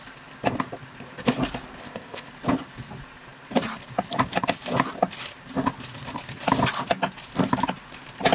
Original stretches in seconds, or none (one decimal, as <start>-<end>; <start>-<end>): 0.0-1.8; 2.3-8.3